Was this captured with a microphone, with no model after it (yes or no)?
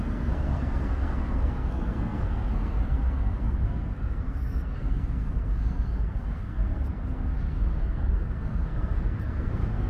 no